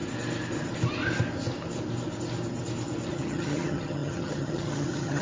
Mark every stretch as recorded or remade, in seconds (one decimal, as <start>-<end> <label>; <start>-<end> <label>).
0.0-3.1 recorded; 3.1-5.2 remade